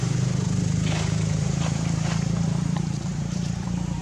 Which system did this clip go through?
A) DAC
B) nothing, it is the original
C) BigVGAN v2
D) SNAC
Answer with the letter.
C